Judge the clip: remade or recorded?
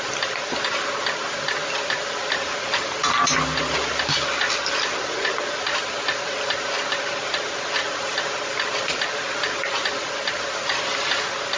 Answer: recorded